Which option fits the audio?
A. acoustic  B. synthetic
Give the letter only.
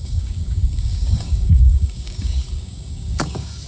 B